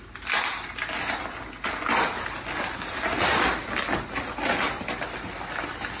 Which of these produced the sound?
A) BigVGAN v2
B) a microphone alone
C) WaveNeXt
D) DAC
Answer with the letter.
B